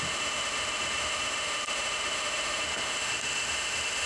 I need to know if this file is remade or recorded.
remade